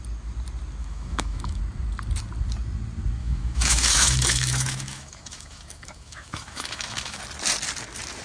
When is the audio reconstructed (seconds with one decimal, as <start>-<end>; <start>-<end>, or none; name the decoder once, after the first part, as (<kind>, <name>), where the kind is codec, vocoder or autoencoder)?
0.8-1.6 (autoencoder, DAC-VAE); 3.2-7.2